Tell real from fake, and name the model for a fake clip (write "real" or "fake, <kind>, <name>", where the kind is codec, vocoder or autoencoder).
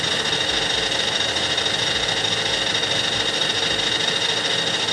real